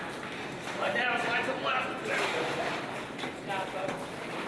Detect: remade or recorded recorded